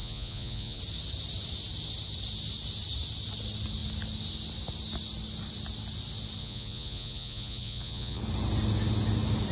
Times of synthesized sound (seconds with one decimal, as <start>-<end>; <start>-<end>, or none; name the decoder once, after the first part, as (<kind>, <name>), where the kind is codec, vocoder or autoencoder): 0.0-0.8 (vocoder, Vocos); 6.4-8.2